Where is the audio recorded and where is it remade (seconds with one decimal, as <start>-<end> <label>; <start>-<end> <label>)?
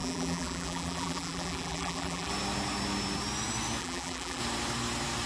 0.0-2.3 remade; 2.3-3.8 recorded; 3.8-4.4 remade; 4.4-5.3 recorded